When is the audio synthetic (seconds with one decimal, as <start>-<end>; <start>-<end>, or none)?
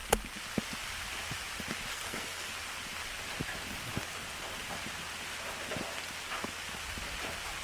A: 1.9-2.5